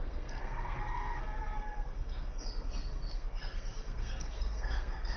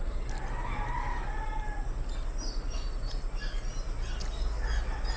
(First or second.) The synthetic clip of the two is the first